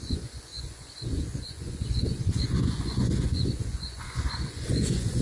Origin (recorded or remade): remade